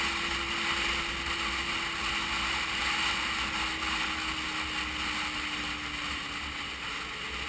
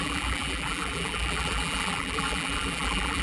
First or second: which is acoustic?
first